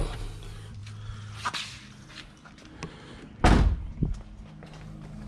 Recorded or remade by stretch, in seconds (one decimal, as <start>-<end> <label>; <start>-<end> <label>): 0.0-5.3 recorded